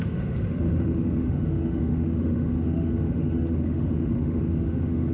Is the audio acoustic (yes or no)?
no